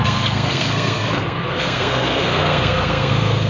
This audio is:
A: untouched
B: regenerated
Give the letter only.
B